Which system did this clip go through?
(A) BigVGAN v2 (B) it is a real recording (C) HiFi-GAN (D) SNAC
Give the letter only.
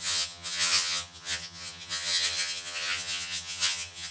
C